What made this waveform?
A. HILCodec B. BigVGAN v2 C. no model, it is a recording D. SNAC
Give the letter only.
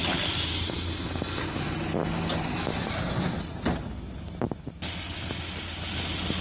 C